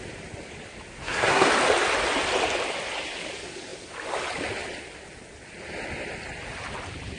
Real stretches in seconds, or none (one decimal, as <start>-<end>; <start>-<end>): 0.0-0.9; 1.5-7.2